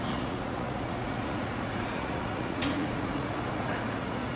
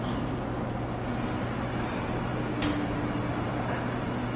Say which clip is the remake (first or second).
first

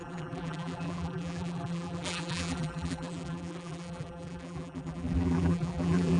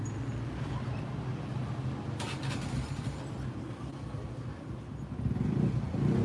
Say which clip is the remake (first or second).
first